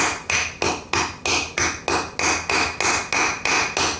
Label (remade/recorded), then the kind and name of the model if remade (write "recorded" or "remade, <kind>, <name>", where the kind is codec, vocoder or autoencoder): recorded